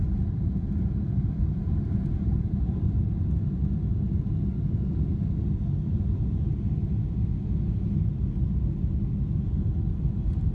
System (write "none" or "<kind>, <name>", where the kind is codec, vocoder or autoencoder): none